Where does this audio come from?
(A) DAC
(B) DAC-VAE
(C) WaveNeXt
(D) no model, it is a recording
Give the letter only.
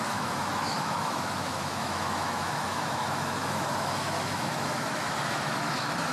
B